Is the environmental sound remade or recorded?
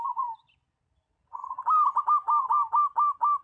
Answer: recorded